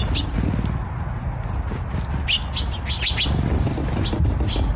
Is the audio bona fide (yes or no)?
yes